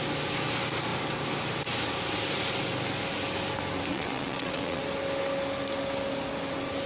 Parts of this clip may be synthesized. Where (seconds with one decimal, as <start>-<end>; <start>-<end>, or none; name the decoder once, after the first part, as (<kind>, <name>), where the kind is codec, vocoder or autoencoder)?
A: 3.9-4.8 (vocoder, WaveNeXt)